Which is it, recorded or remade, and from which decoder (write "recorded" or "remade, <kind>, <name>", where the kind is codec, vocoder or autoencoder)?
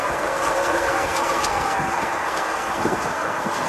remade, codec, SNAC